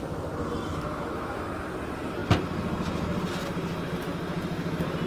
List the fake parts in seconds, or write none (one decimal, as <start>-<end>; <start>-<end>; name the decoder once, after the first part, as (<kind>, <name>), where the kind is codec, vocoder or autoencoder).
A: 0.7-1.4 (autoencoder, DAC-VAE)